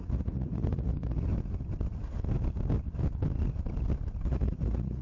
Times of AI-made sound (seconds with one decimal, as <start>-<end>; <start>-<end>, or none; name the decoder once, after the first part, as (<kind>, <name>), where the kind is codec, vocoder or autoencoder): 0.0-1.3 (vocoder, Vocos); 4.3-5.0